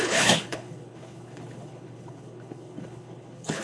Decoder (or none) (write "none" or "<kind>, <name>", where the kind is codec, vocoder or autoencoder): codec, HILCodec